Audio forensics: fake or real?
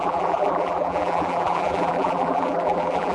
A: fake